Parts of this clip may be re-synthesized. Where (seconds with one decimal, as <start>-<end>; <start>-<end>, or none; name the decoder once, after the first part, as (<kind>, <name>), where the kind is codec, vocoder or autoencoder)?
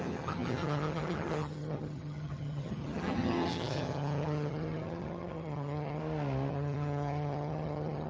0.0-6.0 (vocoder, HiFi-GAN); 6.5-8.1